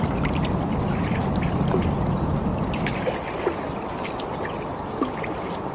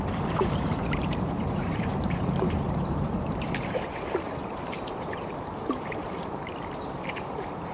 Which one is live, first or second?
first